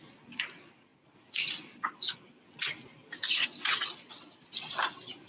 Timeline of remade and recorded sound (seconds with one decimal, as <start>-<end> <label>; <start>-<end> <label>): 0.0-5.3 recorded